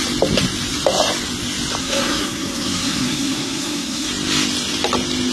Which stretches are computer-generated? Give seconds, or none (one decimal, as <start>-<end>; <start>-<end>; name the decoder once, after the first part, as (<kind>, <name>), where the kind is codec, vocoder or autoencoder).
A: 1.8-4.1 (codec, SNAC)

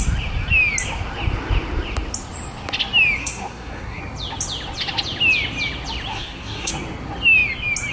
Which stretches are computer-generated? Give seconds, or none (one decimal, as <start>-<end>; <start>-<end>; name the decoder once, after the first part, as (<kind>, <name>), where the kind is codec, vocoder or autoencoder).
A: 3.2-4.0 (codec, SNAC); 6.1-6.7

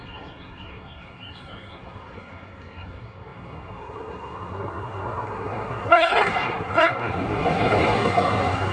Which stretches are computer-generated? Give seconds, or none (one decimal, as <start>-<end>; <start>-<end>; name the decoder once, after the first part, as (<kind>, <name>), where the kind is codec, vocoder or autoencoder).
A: 0.0-8.7 (codec, SNAC)

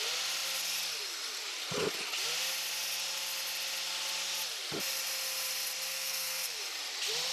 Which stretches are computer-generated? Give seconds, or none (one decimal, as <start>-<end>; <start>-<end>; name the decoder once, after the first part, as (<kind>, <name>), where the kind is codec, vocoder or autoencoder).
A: 5.9-6.6 (codec, SNAC)

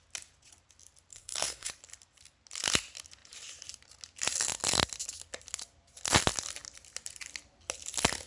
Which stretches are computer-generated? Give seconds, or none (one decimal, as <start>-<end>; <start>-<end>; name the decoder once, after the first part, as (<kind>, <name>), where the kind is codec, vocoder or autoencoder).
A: 1.1-1.7 (codec, SNAC)

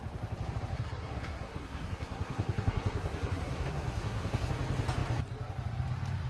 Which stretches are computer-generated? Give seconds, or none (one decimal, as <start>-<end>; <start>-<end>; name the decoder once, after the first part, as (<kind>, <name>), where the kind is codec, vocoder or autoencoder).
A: 0.7-4.5 (codec, SNAC)